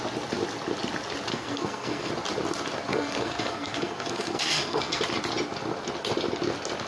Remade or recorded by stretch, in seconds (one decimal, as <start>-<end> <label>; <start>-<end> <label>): 0.0-1.3 recorded; 1.3-2.1 remade; 2.1-2.9 recorded; 2.9-5.0 remade; 5.0-6.9 recorded